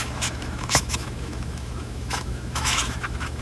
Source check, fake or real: fake